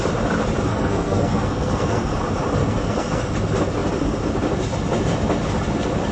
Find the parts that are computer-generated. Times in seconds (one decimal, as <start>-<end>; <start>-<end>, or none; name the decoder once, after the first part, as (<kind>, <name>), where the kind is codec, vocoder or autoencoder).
0.7-2.1 (codec, SNAC); 2.6-3.2